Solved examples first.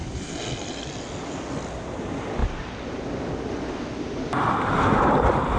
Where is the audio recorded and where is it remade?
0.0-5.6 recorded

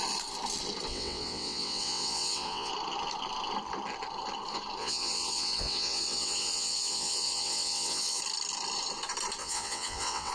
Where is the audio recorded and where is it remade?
0.0-0.9 recorded; 0.9-2.7 remade; 2.7-4.8 recorded; 4.8-8.2 remade; 8.2-9.4 recorded; 9.4-10.3 remade

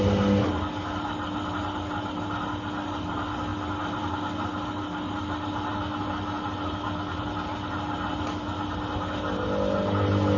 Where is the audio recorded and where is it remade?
0.0-10.4 recorded